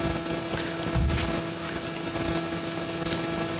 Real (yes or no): yes